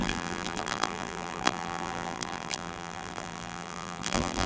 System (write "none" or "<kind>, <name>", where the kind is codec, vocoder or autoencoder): vocoder, BigVGAN v2